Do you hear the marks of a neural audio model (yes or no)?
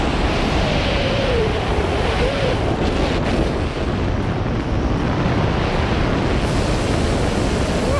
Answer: no